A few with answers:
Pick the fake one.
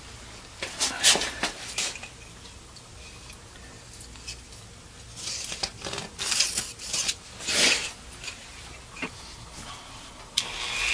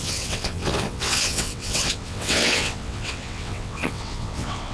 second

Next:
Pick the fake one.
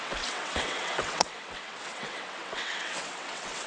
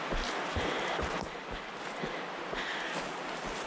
first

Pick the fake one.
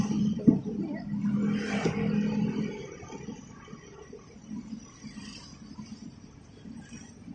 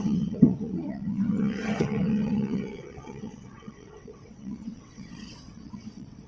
second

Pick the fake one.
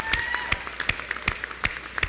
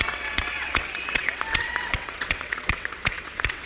second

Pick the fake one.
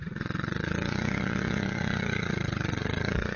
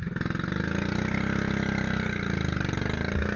first